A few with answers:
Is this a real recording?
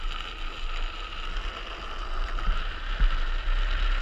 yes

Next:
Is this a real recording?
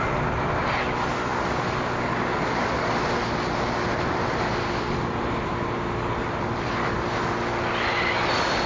yes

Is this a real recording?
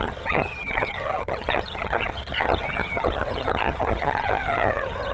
no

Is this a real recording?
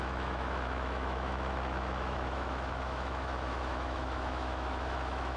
no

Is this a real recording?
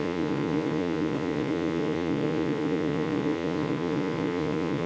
no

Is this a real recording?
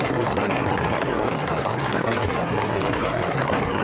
no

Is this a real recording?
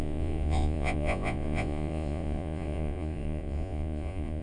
no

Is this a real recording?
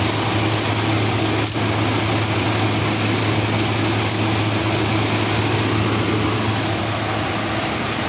yes